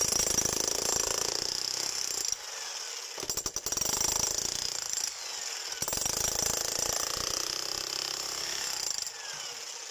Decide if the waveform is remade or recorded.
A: recorded